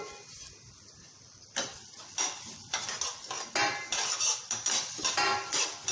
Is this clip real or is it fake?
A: real